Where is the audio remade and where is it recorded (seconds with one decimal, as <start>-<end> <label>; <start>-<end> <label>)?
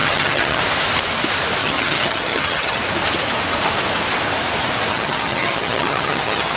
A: 0.0-0.6 remade; 0.6-1.6 recorded; 1.6-2.8 remade; 2.8-4.9 recorded; 4.9-6.6 remade